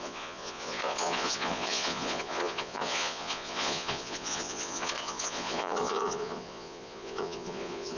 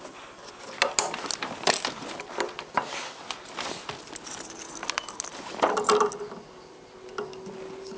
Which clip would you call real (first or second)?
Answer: second